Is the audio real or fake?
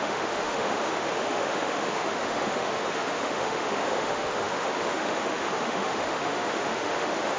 fake